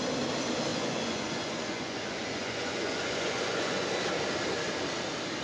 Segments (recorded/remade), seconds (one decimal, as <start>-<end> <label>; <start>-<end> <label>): 0.0-0.7 recorded; 0.7-3.9 remade; 3.9-5.4 recorded